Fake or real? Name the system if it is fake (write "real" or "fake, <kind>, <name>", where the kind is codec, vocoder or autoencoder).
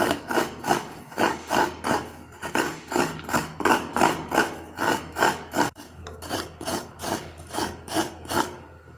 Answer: fake, codec, DAC